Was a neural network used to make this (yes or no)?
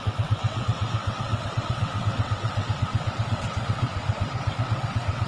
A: yes